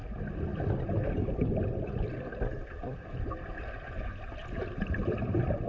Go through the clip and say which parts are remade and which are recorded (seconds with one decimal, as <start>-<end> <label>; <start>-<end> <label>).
0.0-5.7 recorded